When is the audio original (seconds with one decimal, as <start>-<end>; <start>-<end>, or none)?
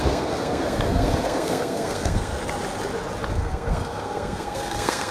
2.3-3.3